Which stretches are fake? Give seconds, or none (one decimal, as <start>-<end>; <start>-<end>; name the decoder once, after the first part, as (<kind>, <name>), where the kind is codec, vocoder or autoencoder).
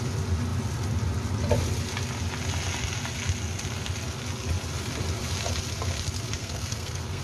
6.4-7.2 (codec, SNAC)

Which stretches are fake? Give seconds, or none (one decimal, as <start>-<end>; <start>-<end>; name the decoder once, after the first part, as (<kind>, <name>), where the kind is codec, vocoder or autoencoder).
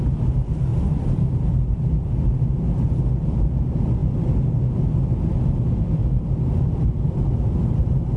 0.7-1.5 (vocoder, BigVGAN v2); 4.0-4.6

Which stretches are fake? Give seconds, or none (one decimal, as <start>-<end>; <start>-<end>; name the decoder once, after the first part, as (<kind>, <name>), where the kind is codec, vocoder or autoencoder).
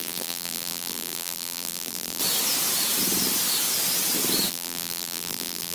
0.0-2.2 (vocoder, BigVGAN v2); 4.5-5.7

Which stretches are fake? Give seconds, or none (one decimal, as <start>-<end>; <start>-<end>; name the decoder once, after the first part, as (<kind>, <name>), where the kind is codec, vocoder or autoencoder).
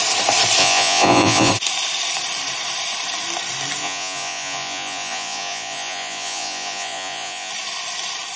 0.6-1.5 (vocoder, Vocos); 3.8-7.5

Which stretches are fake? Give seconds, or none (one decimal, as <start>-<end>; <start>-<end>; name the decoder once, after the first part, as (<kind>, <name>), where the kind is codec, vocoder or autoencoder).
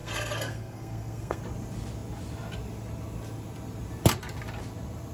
0.0-1.4 (codec, SNAC)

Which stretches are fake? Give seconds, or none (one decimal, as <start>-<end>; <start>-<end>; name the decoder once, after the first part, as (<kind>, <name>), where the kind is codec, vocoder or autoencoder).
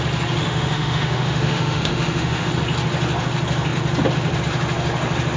0.4-2.5 (autoencoder, DAC-VAE)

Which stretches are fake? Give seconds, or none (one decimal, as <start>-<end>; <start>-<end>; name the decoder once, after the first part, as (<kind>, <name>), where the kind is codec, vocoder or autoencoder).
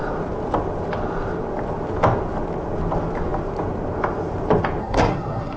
4.8-5.6 (codec, SNAC)